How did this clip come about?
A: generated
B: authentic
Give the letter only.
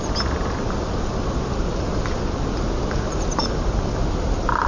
B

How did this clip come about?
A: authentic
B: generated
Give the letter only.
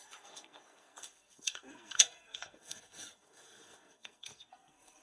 B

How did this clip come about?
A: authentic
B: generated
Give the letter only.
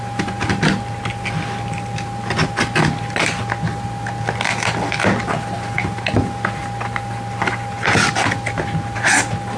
A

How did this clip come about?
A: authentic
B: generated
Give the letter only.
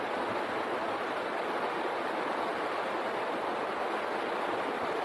A